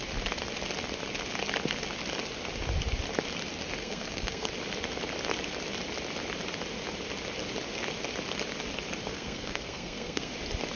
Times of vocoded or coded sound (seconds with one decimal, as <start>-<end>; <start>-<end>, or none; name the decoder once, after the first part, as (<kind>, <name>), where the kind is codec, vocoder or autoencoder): 3.8-4.5 (codec, SNAC); 9.1-10.3